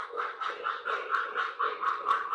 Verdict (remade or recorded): recorded